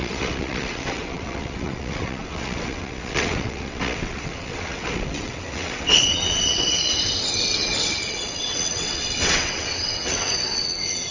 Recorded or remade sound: remade